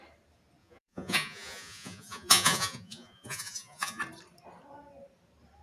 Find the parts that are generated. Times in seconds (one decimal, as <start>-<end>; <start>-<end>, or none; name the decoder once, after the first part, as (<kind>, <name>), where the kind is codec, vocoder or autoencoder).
0.6-4.0 (vocoder, Vocos)